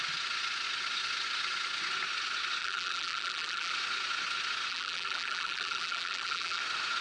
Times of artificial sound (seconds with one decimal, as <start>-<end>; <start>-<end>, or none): 2.6-3.7; 4.7-6.6